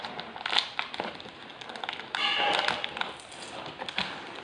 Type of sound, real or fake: real